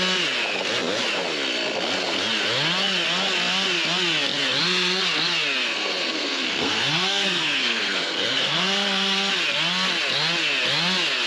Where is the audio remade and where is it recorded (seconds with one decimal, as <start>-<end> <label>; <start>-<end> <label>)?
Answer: 0.0-5.6 recorded; 5.6-9.3 remade; 9.3-11.3 recorded